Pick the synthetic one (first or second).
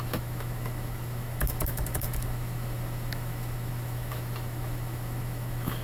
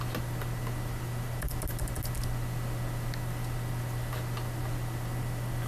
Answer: first